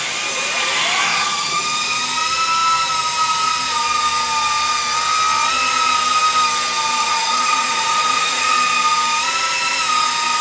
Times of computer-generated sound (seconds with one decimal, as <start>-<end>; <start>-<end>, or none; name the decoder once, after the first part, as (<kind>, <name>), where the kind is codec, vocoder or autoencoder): 1.1-1.6 (vocoder, Vocos); 7.0-8.5